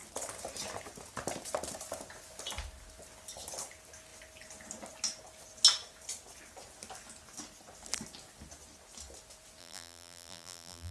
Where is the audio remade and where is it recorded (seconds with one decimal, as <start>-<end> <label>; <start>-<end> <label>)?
0.0-9.6 recorded; 9.6-10.9 remade

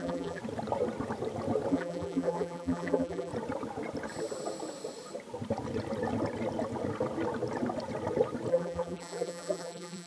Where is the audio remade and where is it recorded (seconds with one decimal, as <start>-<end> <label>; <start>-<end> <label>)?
0.0-0.4 remade; 0.4-1.7 recorded; 1.7-3.3 remade; 3.3-8.5 recorded; 8.5-10.1 remade

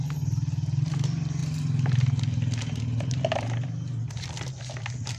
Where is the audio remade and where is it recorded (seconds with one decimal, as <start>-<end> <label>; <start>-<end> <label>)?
0.0-1.4 recorded; 1.4-4.5 remade; 4.5-5.2 recorded

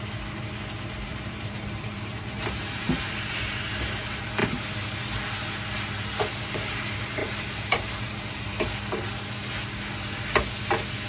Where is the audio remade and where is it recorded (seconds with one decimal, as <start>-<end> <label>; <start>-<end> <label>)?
0.0-1.1 recorded; 1.1-2.9 remade; 2.9-7.2 recorded; 7.2-8.2 remade; 8.2-11.1 recorded

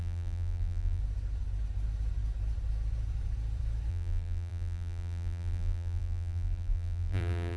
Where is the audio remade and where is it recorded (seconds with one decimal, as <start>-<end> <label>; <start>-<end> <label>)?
0.0-1.0 remade; 1.0-3.9 recorded; 3.9-7.6 remade

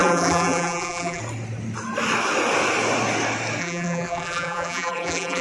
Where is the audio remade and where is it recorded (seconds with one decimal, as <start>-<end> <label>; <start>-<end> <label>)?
0.0-1.2 remade; 1.2-3.6 recorded; 3.6-5.4 remade

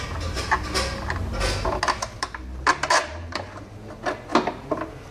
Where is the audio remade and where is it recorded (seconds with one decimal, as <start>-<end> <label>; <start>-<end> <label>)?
0.0-3.0 recorded; 3.0-3.7 remade; 3.7-5.1 recorded

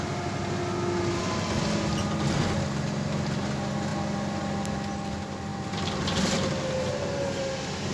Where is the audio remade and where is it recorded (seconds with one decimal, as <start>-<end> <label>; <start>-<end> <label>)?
0.0-5.5 recorded; 5.5-6.5 remade; 6.5-7.9 recorded